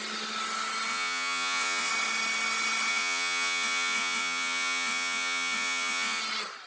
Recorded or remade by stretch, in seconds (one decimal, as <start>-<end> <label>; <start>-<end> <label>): 0.0-0.9 recorded; 0.9-1.9 remade; 1.9-2.9 recorded; 2.9-6.2 remade; 6.2-6.7 recorded